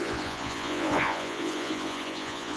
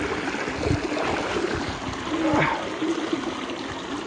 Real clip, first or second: second